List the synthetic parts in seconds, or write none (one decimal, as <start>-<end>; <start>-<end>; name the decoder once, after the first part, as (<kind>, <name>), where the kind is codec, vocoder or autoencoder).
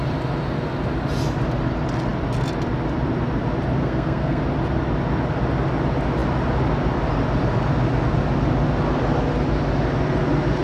3.8-4.4 (codec, SNAC)